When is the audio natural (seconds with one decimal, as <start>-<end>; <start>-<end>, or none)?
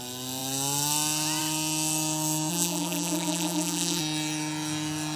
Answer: 0.0-2.5; 4.0-5.2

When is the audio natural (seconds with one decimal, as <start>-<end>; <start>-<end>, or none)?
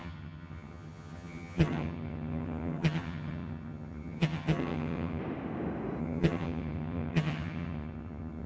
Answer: 5.2-6.0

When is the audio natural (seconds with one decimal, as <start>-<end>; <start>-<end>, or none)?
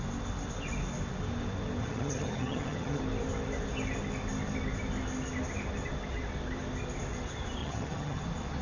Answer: 0.0-1.8; 3.0-7.6; 8.2-8.6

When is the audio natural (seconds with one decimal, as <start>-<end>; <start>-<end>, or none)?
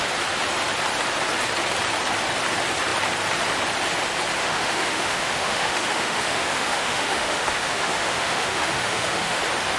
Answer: 0.0-4.4; 9.4-9.8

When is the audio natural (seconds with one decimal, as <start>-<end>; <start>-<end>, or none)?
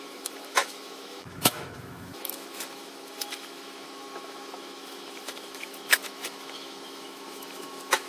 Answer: none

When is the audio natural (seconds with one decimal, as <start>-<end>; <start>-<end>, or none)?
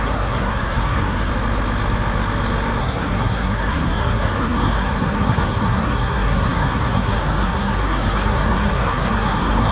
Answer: 1.3-2.8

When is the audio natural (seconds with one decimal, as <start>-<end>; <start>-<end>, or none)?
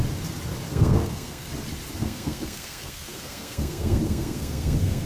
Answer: 0.0-0.7; 1.5-2.0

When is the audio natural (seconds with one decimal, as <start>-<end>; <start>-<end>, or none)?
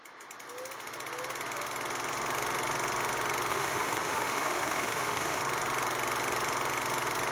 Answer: 0.0-3.5; 5.4-7.3